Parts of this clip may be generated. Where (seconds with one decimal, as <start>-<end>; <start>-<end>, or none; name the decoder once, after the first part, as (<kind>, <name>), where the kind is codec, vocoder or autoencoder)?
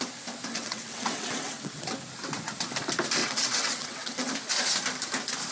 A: 0.5-1.8 (vocoder, WaveNeXt); 3.2-4.3